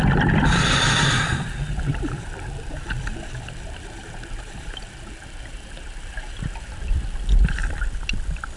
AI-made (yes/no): yes